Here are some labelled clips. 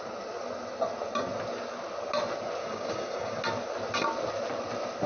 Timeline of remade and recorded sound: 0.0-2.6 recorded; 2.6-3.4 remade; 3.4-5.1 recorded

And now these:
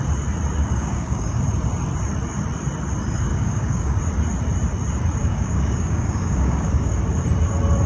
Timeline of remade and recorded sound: 0.0-0.6 recorded; 0.6-1.4 remade; 1.4-3.3 recorded; 3.3-4.0 remade; 4.0-5.2 recorded; 5.2-6.9 remade; 6.9-7.9 recorded

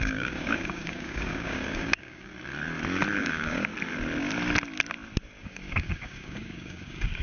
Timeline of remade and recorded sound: 0.0-2.3 remade; 2.3-3.2 recorded; 3.2-3.7 remade; 3.7-5.4 recorded; 5.4-7.2 remade

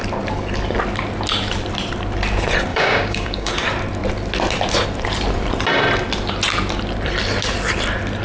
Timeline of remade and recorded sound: 0.0-2.7 recorded; 2.7-3.5 remade; 3.5-8.2 recorded

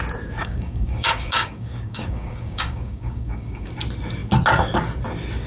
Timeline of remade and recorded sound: 0.0-0.4 recorded; 0.4-3.7 remade; 3.7-5.5 recorded

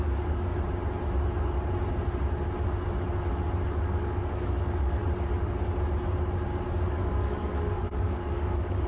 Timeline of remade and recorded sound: 0.0-0.5 remade; 0.5-3.7 recorded; 3.7-5.0 remade; 5.0-6.9 recorded; 6.9-8.9 remade

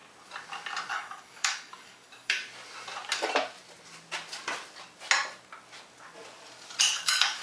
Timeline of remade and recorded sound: 0.0-0.9 recorded; 0.9-2.4 remade; 2.4-6.8 recorded; 6.8-7.4 remade

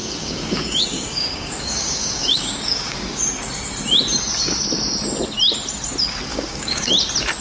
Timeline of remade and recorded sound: 0.0-3.2 remade; 3.2-6.3 recorded; 6.3-6.9 remade; 6.9-7.4 recorded